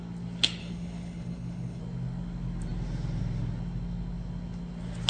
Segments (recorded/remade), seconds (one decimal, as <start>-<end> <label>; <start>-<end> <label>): 0.0-0.6 recorded; 0.6-1.8 remade; 1.8-5.1 recorded